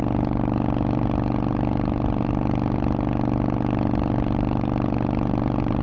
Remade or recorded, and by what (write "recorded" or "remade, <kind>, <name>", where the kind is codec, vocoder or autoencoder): recorded